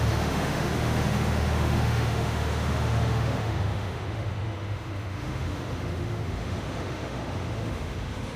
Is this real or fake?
fake